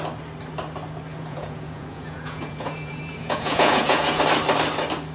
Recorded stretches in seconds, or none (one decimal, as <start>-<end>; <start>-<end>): 0.0-1.1; 4.2-5.1